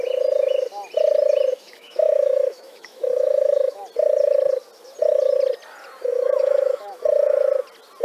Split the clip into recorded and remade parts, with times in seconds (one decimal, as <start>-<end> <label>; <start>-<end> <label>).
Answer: 0.0-1.5 recorded; 1.5-3.8 remade; 3.8-6.1 recorded; 6.1-7.0 remade; 7.0-8.0 recorded